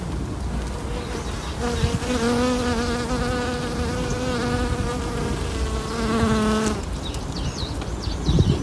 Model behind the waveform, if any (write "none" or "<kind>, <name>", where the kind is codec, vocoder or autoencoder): none